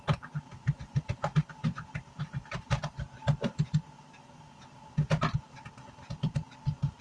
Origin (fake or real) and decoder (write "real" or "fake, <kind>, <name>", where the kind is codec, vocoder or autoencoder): real